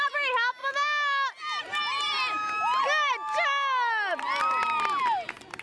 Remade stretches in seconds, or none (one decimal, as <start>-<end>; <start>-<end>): none